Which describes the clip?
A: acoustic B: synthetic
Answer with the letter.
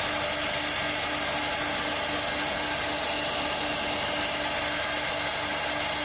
A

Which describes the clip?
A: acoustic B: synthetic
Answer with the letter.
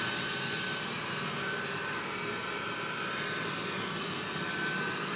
A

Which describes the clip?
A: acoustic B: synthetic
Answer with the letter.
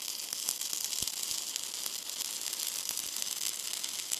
A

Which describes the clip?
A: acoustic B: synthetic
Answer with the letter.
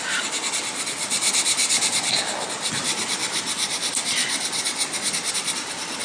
A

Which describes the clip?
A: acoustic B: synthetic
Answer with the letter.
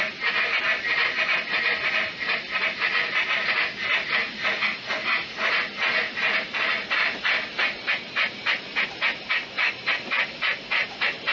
A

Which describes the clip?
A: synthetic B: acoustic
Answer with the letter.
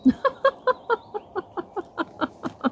B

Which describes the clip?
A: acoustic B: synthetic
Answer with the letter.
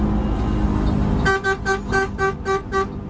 A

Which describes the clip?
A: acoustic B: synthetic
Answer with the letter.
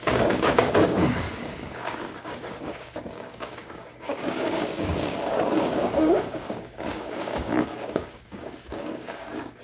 B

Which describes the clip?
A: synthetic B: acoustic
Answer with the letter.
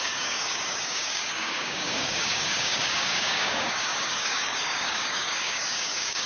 A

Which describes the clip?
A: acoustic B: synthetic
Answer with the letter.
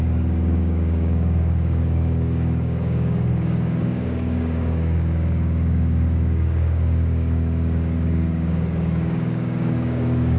B